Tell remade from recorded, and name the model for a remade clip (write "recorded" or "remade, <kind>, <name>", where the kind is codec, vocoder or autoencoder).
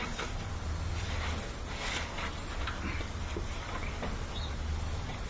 recorded